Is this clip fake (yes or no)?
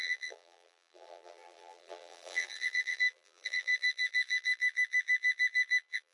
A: yes